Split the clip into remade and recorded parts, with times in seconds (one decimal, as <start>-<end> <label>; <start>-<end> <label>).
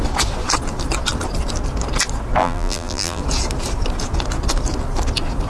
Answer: 0.0-2.4 recorded; 2.4-3.2 remade; 3.2-5.5 recorded